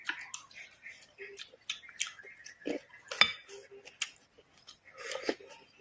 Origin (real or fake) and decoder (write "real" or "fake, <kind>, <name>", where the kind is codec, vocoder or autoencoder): real